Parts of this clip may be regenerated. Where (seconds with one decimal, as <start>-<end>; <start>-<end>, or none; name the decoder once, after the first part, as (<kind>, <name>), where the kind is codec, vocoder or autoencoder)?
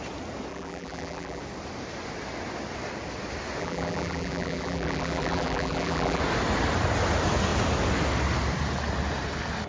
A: 0.5-1.4 (vocoder, BigVGAN v2); 3.6-6.2